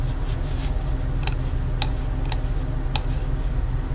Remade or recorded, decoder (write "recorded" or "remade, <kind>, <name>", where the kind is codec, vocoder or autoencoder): recorded